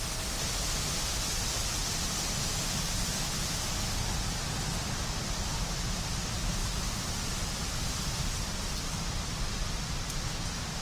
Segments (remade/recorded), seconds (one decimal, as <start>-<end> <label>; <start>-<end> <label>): 0.0-10.8 recorded